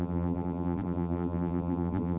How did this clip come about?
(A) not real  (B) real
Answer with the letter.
A